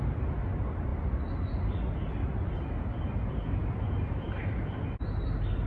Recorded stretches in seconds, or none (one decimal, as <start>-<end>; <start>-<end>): 0.0-5.7